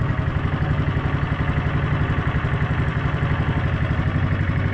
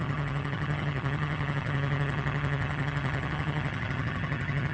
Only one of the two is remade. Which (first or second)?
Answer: second